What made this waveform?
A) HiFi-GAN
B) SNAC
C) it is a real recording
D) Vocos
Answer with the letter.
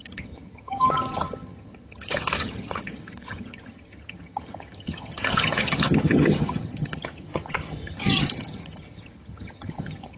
A